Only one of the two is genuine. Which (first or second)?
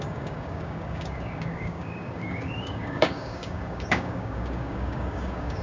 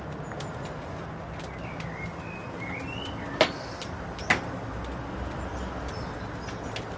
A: second